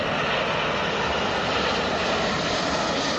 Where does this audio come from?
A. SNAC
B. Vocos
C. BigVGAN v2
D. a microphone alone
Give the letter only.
D